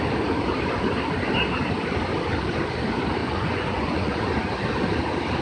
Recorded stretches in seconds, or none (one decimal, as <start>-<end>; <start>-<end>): 0.0-3.2; 4.3-5.4